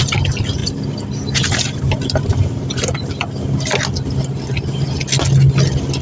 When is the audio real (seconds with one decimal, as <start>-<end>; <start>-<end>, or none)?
0.0-0.6; 3.1-6.0